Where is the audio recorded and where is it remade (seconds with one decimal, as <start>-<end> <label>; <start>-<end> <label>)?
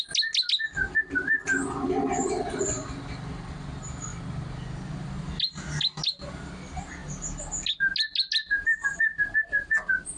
0.0-10.2 recorded